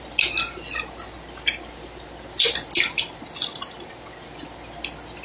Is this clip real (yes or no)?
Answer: yes